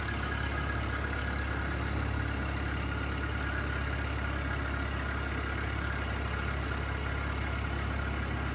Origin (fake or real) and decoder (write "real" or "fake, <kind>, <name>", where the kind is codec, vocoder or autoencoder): real